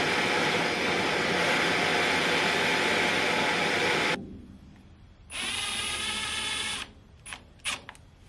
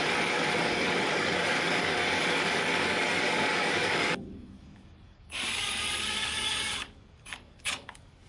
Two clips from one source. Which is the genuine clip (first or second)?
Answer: first